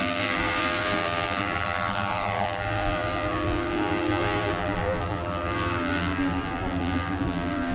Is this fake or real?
fake